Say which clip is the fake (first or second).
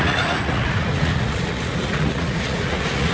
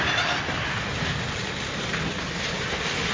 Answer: first